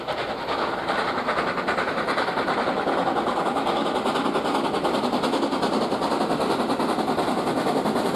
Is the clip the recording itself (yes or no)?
yes